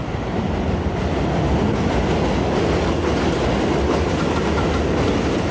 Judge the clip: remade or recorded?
recorded